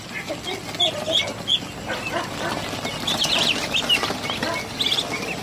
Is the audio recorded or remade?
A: recorded